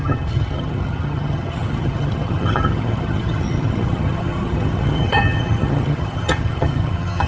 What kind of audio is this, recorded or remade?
remade